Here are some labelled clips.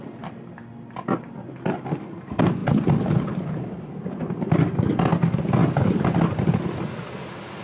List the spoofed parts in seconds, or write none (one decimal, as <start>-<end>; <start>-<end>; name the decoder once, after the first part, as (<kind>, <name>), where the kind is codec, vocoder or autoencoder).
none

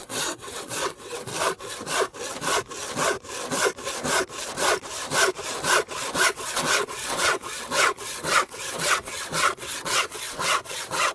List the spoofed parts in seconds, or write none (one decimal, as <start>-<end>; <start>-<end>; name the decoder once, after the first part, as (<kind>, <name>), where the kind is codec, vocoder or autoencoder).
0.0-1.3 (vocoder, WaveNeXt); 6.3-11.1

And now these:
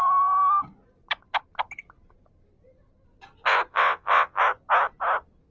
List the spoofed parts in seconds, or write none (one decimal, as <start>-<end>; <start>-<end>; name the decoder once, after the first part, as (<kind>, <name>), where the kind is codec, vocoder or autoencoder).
3.7-4.4 (vocoder, WaveNeXt)

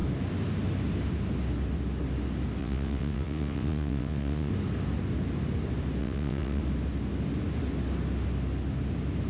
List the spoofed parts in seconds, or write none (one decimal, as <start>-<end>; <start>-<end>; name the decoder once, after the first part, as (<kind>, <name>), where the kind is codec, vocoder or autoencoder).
2.6-4.5 (vocoder, WaveNeXt); 6.0-6.6

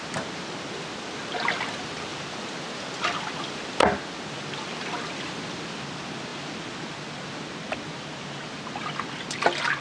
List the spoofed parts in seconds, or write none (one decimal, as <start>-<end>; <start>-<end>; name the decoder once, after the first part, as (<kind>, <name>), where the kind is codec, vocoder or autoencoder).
none

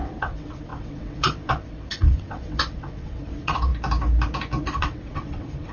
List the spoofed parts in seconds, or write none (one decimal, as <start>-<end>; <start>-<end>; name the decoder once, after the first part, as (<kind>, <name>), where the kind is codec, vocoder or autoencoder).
0.0-3.7 (vocoder, WaveNeXt); 4.8-5.7

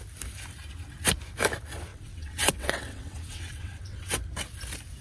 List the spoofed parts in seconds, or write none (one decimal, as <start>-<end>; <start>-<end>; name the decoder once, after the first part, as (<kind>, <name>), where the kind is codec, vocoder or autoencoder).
1.9-4.2 (vocoder, WaveNeXt)